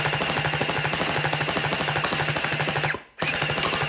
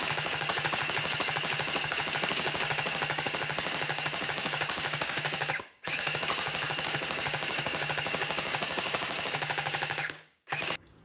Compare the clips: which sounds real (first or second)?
first